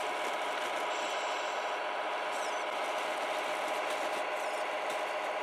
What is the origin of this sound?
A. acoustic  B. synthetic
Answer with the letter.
A